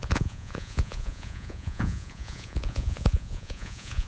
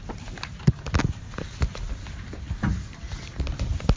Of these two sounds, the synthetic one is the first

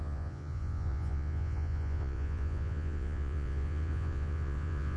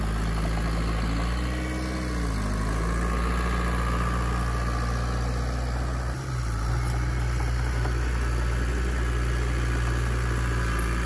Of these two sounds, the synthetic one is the first